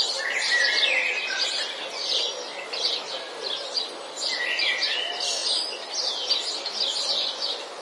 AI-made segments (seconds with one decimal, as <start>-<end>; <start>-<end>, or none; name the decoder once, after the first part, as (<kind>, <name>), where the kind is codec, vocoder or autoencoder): 7.1-7.8 (vocoder, Vocos)